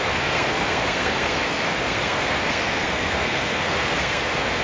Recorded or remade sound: remade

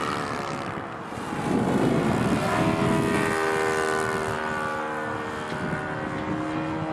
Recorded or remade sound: recorded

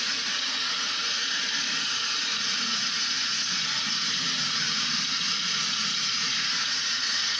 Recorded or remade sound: remade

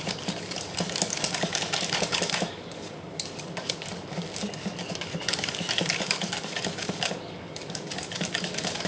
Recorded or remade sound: remade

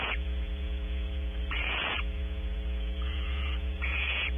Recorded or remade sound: remade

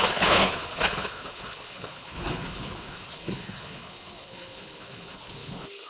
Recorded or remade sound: remade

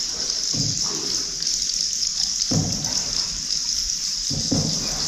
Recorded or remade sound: recorded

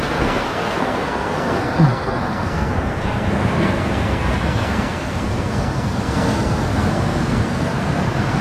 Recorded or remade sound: remade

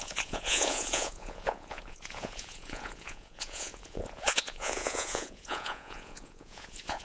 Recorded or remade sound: remade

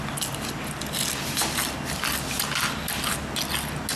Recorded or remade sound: recorded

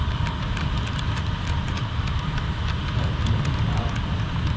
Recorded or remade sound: recorded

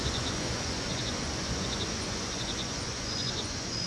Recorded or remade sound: remade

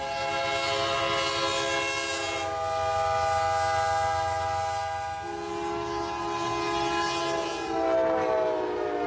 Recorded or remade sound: recorded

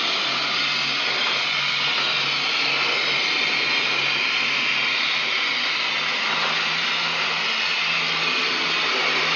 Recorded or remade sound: recorded